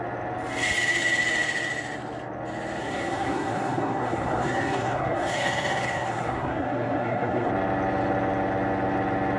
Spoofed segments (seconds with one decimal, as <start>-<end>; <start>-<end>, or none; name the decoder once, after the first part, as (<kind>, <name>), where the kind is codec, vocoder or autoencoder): 2.8-7.5 (codec, SNAC)